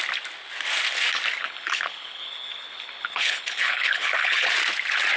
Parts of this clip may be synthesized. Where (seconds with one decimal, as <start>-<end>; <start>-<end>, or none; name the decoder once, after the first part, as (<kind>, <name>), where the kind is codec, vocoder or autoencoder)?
1.4-4.5 (codec, HILCodec)